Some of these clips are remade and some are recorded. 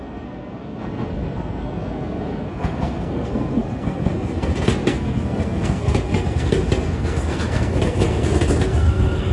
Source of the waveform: remade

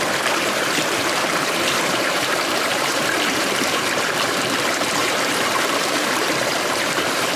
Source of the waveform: remade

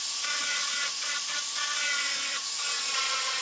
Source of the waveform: remade